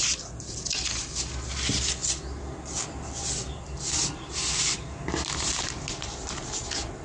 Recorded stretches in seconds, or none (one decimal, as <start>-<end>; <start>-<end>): 0.0-7.0